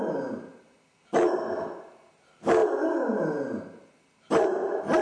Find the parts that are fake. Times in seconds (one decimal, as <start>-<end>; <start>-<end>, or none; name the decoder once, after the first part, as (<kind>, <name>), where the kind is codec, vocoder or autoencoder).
none